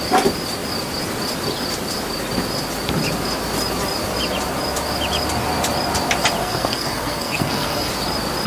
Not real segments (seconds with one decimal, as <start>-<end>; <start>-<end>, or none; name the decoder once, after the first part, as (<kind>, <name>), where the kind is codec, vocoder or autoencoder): 6.4-7.9 (codec, SNAC)